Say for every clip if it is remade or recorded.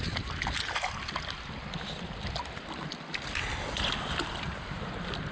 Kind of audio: recorded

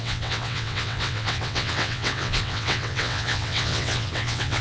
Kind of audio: remade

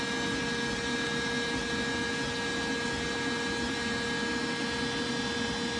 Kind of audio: recorded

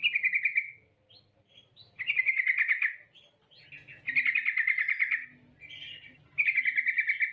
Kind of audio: recorded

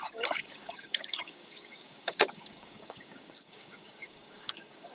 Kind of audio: remade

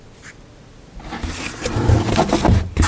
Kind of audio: recorded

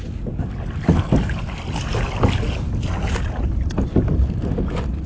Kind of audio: recorded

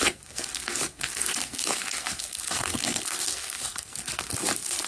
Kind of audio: remade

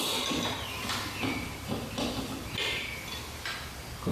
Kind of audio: recorded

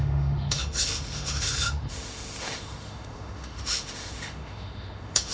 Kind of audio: remade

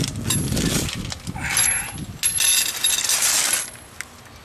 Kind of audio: recorded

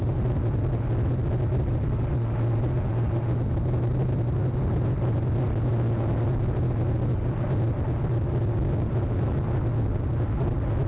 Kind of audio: recorded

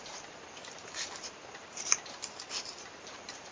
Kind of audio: remade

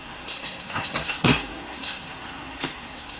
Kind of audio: remade